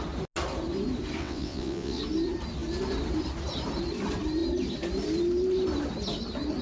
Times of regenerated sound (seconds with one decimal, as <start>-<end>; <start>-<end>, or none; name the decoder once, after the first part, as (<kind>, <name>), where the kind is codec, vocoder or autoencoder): 1.2-2.0 (vocoder, WaveNeXt)